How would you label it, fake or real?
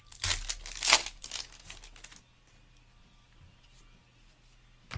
real